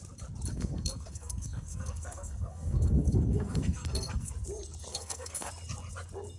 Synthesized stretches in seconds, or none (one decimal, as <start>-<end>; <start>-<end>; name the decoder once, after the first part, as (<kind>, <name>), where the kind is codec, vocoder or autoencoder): 0.5-4.3 (codec, SNAC); 4.9-5.5